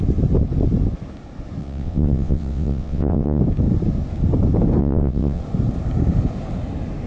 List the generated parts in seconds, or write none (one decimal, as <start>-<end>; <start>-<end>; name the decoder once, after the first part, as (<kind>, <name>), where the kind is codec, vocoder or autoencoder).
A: 1.6-3.4 (vocoder, WaveNeXt); 4.8-5.4